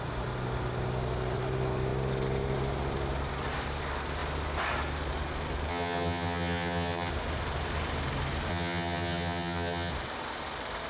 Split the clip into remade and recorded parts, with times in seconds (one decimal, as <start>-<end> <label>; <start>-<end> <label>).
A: 0.0-5.7 recorded; 5.7-7.1 remade; 7.1-8.5 recorded; 8.5-9.9 remade; 9.9-10.9 recorded